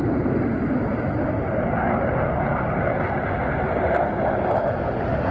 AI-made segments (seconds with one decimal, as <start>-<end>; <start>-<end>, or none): none